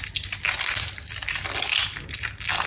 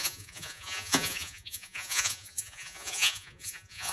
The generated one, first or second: second